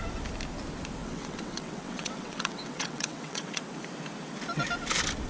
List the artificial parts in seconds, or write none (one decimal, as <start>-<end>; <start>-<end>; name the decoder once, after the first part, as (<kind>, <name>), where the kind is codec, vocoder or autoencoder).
1.0-3.6 (vocoder, WaveNeXt)